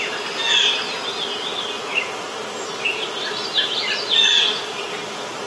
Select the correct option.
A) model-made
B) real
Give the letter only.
B